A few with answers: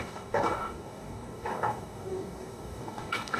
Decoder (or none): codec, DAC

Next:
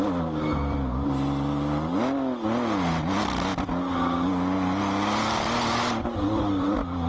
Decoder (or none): none